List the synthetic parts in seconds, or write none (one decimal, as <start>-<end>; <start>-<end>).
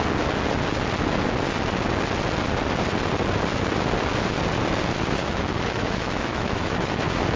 5.2-7.0